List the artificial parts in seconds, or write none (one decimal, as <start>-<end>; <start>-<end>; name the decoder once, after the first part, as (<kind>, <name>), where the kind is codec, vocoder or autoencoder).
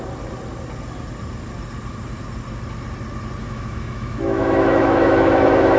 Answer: 3.4-5.8 (autoencoder, DAC-VAE)